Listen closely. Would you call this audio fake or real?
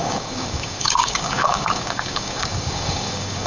fake